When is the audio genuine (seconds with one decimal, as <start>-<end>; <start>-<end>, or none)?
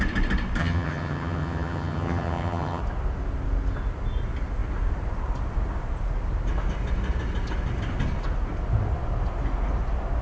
0.0-0.6; 2.8-10.2